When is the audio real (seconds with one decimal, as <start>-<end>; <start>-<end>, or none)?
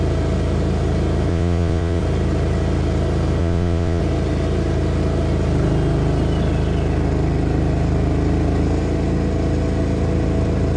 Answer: 0.0-1.3; 2.0-3.4; 4.0-10.8